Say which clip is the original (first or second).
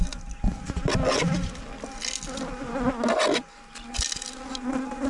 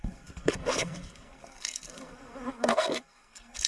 first